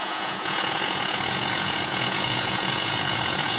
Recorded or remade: remade